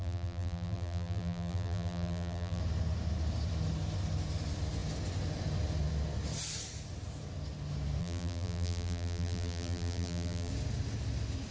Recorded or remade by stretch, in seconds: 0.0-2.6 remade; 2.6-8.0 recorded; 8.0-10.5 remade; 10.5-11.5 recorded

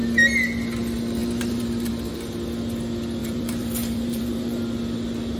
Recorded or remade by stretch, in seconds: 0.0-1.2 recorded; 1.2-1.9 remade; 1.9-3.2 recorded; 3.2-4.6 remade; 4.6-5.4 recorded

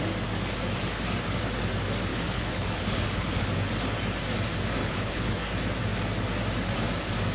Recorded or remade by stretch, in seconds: 0.0-2.1 recorded; 2.1-3.5 remade; 3.5-4.8 recorded; 4.8-5.4 remade; 5.4-7.3 recorded

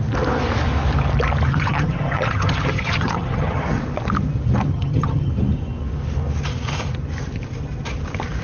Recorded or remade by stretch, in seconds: 0.0-1.5 recorded; 1.5-3.8 remade; 3.8-4.7 recorded; 4.7-5.3 remade; 5.3-8.4 recorded

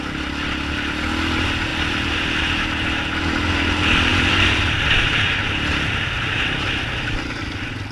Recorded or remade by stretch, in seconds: 0.0-4.1 recorded; 4.1-5.4 remade; 5.4-7.9 recorded